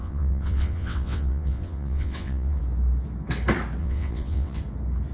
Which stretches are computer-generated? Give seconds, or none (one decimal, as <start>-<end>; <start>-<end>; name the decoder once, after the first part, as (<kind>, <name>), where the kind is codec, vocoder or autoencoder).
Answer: 0.0-2.6 (vocoder, WaveNeXt); 3.8-4.6